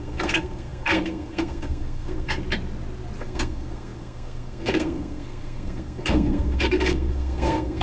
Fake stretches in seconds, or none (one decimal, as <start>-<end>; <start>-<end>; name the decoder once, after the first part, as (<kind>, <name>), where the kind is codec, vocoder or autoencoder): 0.0-2.4 (codec, SNAC); 3.2-7.8